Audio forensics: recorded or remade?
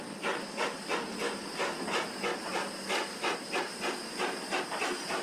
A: recorded